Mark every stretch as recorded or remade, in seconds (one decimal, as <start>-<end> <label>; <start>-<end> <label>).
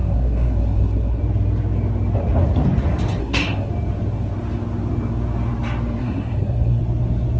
0.0-1.2 remade; 1.2-3.2 recorded; 3.2-3.7 remade; 3.7-6.0 recorded; 6.0-6.8 remade; 6.8-7.4 recorded